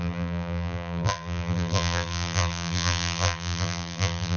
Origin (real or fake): fake